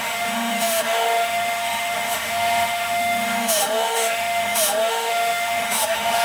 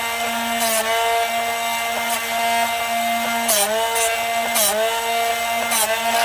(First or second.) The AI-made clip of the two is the first